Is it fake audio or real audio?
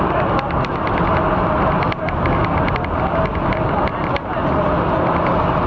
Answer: real